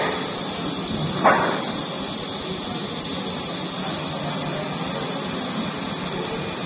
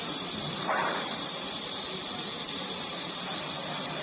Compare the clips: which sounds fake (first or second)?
second